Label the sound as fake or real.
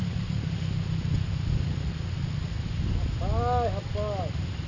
real